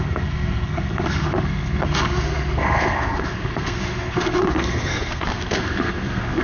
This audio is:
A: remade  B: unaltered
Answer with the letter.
A